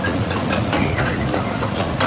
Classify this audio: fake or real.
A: fake